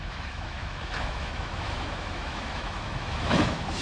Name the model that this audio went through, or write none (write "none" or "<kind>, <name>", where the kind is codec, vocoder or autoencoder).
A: autoencoder, DAC-VAE